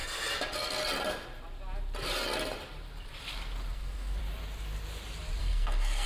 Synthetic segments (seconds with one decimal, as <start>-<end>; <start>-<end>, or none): 3.7-4.2; 5.4-6.1